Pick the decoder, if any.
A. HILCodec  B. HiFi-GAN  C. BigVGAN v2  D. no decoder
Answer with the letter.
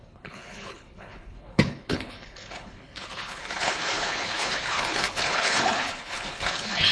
A